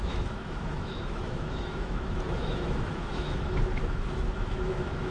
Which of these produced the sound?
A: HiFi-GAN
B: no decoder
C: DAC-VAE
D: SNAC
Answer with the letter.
C